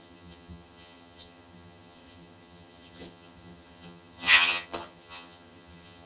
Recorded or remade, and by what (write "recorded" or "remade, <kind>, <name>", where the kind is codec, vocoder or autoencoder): remade, vocoder, HiFi-GAN